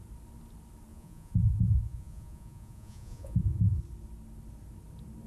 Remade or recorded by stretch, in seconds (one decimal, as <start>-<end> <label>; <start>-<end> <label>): 0.0-0.9 recorded; 0.9-3.8 remade; 3.8-5.3 recorded